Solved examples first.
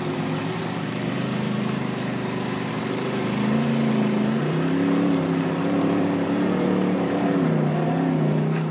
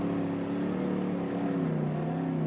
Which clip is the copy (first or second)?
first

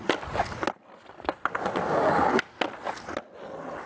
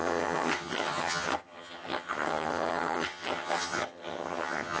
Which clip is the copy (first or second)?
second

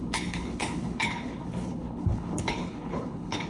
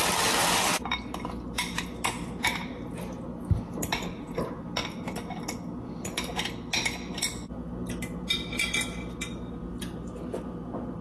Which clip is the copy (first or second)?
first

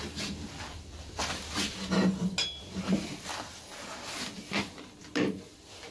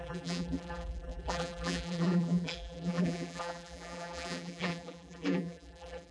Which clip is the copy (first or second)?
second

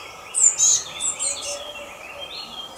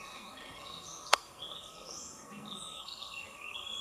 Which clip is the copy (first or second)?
second